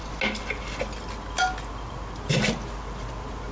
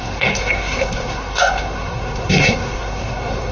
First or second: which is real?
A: first